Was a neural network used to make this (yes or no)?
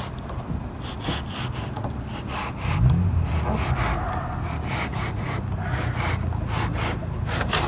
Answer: no